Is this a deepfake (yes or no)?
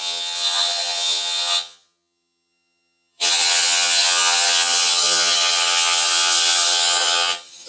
yes